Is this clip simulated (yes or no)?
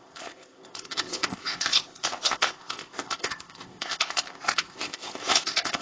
yes